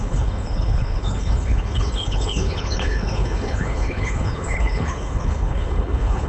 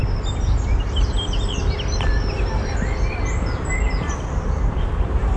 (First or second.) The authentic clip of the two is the second